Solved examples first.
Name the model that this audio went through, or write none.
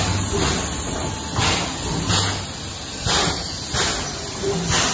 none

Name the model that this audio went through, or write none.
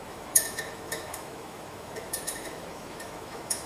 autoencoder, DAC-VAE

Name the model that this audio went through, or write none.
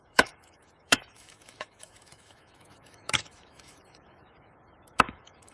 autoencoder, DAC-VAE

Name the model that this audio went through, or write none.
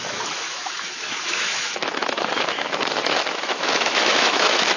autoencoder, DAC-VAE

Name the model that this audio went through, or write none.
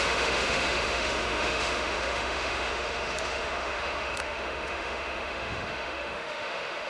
autoencoder, DAC-VAE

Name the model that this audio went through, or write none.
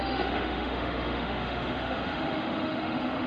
autoencoder, DAC-VAE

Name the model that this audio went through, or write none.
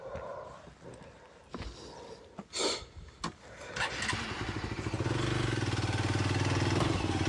none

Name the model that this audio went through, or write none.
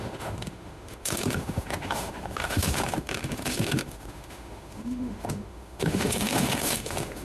autoencoder, DAC-VAE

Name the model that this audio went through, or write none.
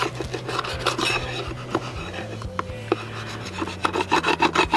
none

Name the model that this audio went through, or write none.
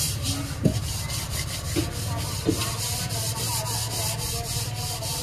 none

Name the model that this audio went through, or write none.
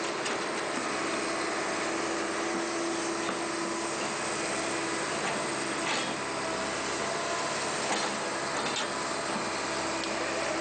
none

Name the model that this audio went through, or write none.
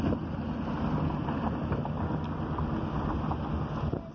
none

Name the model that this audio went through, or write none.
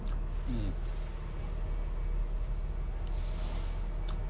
none